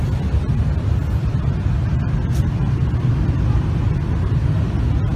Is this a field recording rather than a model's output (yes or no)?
yes